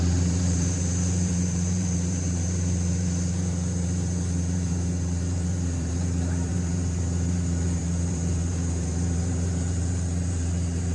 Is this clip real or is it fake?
fake